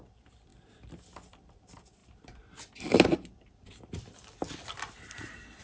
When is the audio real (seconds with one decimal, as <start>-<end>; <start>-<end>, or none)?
0.0-5.6